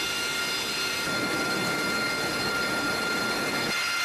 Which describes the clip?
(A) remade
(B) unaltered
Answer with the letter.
B